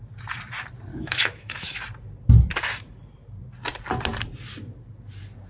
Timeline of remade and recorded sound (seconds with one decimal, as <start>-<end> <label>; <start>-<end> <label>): 0.0-0.9 recorded; 0.9-1.8 remade; 1.8-5.5 recorded